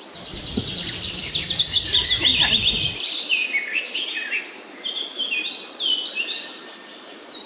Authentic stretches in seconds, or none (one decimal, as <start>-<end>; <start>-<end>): 0.0-7.5